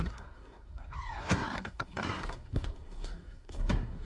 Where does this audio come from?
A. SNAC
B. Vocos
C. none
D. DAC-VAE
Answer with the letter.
A